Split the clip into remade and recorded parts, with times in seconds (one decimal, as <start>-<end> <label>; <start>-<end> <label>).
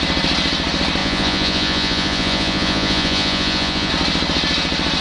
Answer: 0.0-1.0 recorded; 1.0-3.9 remade; 3.9-5.0 recorded